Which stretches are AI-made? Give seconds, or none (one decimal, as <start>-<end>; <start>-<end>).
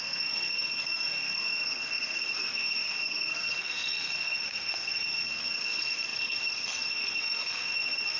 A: 0.0-8.2